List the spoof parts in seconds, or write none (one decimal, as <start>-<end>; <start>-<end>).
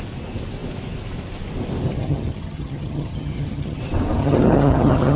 1.9-3.8; 4.2-5.2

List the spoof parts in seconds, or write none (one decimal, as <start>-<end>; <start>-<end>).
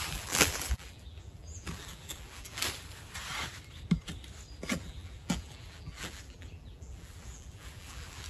0.0-2.6; 4.6-8.3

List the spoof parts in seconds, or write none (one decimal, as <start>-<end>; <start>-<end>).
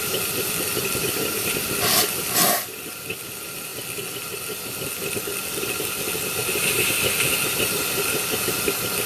none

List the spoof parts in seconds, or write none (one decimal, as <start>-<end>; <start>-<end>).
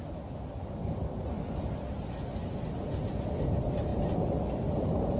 none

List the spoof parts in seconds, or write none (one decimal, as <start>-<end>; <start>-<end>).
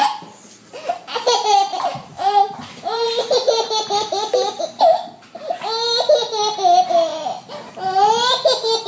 1.7-3.8